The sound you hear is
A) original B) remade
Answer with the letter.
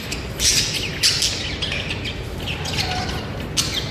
A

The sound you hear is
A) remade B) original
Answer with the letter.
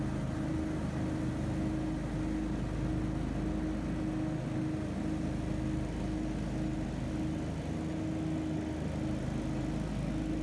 B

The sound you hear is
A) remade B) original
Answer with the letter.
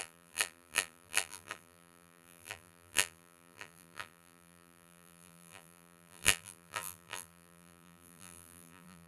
A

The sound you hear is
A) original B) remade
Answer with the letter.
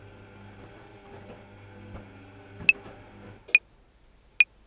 A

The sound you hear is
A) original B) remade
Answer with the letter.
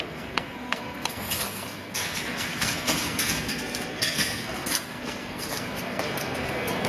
B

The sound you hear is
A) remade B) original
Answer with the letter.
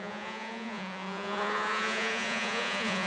A